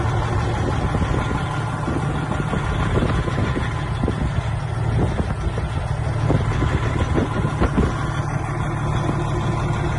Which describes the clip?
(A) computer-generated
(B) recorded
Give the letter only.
B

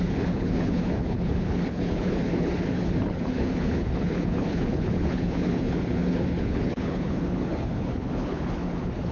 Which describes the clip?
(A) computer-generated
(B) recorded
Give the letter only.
A